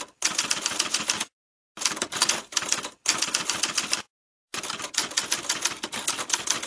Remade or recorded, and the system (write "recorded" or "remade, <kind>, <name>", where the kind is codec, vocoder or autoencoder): recorded